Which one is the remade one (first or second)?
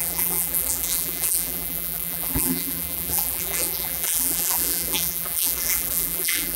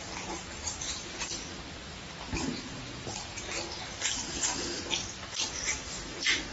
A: first